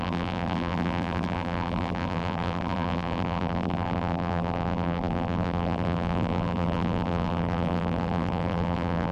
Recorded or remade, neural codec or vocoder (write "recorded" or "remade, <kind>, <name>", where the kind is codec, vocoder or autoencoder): remade, vocoder, BigVGAN v2